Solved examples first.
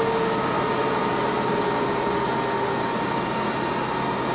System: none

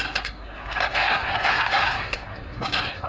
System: codec, SNAC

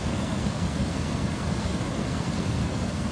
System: codec, SNAC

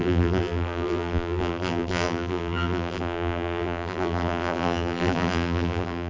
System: vocoder, BigVGAN v2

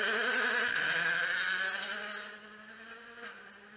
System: none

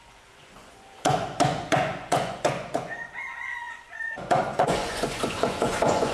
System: vocoder, Vocos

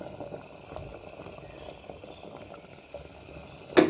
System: none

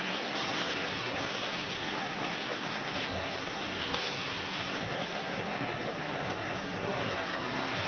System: codec, SNAC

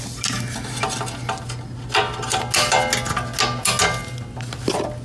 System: none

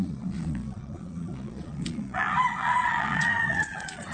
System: vocoder, Vocos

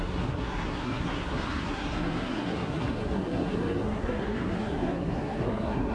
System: codec, SNAC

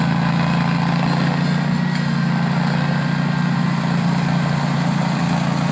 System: none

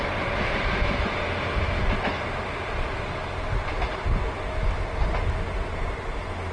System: none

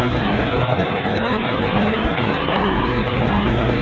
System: codec, SNAC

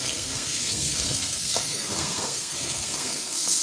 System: codec, SNAC